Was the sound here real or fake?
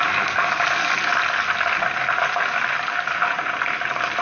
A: real